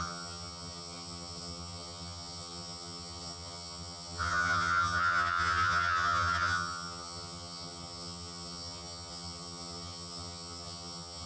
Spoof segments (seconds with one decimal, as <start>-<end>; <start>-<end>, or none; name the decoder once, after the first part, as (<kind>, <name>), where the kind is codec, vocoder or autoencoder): 0.0-11.3 (vocoder, HiFi-GAN)